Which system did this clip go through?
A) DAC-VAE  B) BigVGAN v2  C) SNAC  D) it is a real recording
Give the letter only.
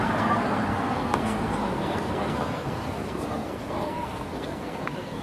C